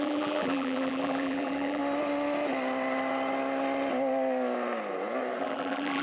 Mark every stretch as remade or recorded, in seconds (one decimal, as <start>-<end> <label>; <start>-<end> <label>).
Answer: 0.0-1.8 remade; 1.8-5.4 recorded; 5.4-6.0 remade